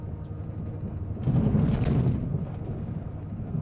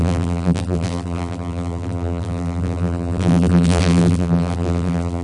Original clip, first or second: first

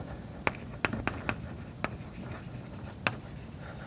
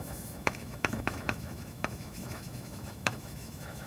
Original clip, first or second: first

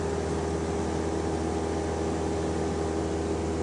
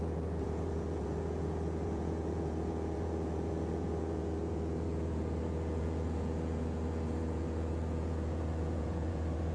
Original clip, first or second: first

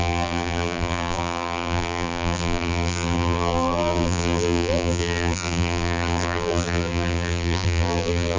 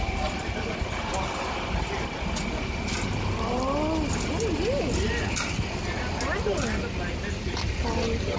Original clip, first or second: second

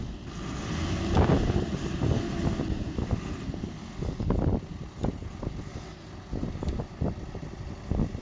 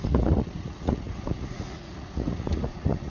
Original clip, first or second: first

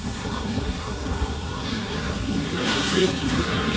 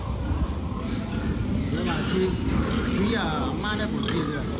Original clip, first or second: second